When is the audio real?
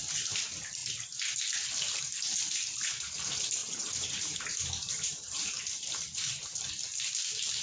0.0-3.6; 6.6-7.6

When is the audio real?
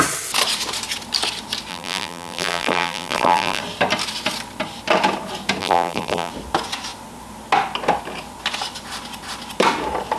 0.0-1.7; 3.6-5.6; 6.3-10.2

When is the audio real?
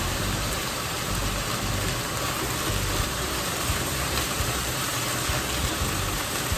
1.2-3.0; 4.9-5.6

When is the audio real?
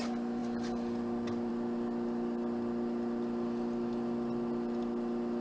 0.0-5.4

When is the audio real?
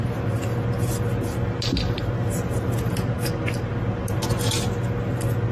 0.0-1.7; 3.7-5.5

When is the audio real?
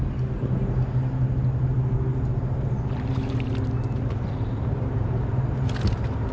0.0-2.1